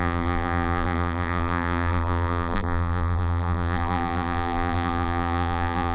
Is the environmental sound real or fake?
fake